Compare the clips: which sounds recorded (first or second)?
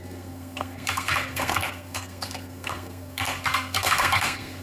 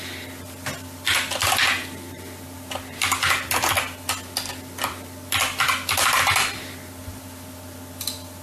second